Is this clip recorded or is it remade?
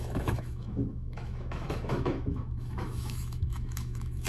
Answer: remade